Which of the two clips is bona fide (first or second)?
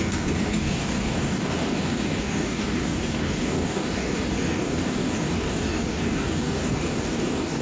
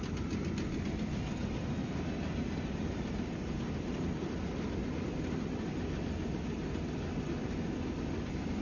second